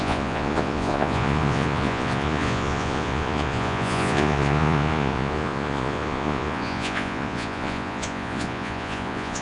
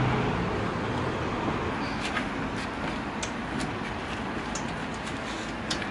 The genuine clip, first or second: second